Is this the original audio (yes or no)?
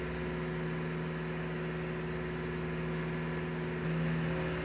yes